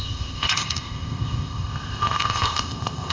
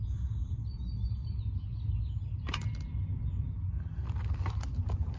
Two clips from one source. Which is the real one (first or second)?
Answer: second